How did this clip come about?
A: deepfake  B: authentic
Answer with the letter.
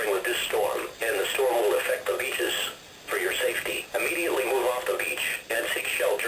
B